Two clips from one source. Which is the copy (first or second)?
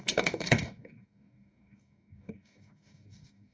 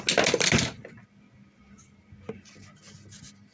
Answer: first